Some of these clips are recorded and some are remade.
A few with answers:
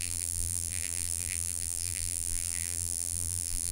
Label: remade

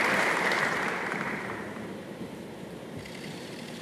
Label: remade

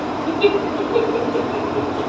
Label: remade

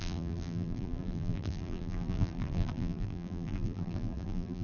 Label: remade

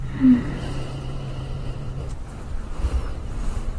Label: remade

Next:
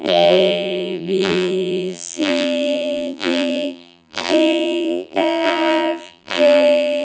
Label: remade